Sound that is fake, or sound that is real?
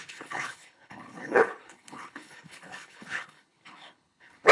fake